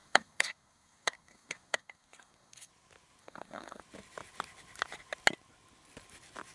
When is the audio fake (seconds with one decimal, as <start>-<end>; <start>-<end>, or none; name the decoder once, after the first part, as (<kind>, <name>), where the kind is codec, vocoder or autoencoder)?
0.0-2.7 (codec, SNAC); 3.2-3.8